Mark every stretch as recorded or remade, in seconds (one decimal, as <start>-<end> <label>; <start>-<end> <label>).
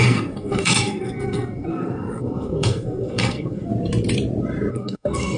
0.0-3.7 remade; 3.7-4.7 recorded; 4.7-5.4 remade